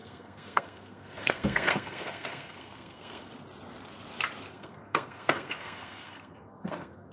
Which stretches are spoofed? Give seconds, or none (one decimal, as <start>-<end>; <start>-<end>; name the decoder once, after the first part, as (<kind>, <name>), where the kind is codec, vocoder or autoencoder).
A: 0.0-3.3 (codec, SNAC); 4.5-7.1